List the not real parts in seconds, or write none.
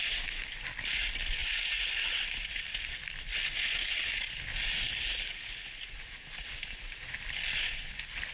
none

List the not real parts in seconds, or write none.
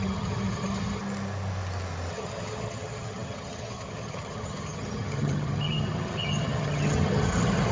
0.0-1.0 (vocoder, HiFi-GAN); 2.1-7.7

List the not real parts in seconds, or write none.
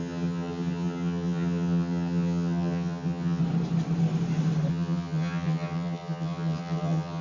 0.0-3.4 (vocoder, HiFi-GAN); 4.7-7.2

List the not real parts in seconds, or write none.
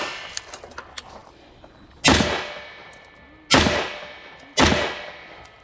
none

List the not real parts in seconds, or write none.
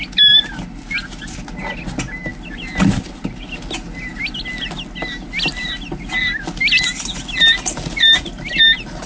none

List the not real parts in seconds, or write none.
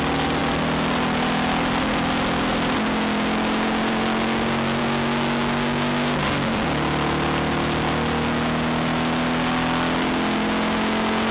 none